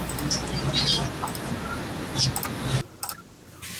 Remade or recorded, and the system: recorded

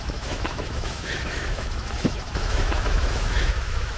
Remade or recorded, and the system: remade, autoencoder, DAC-VAE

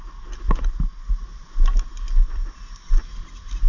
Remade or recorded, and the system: recorded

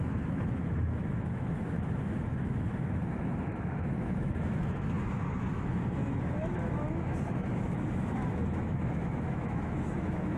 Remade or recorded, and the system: remade, autoencoder, DAC-VAE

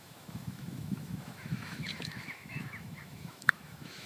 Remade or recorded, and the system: remade, autoencoder, DAC-VAE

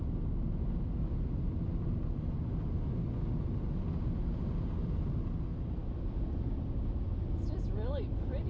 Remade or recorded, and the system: recorded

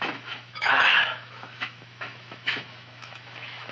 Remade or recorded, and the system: remade, autoencoder, DAC-VAE